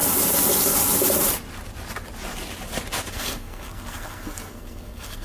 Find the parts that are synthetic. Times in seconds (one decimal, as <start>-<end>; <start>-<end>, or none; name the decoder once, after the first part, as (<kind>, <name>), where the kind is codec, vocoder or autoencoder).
3.1-5.2 (codec, SNAC)